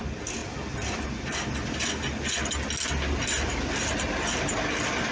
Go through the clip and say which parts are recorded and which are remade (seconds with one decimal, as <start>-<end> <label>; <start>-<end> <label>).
0.0-5.1 recorded